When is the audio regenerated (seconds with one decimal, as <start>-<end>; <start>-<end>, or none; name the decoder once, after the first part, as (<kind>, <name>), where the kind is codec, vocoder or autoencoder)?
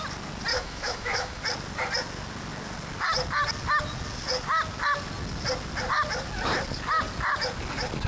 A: 0.5-1.4 (autoencoder, DAC-VAE)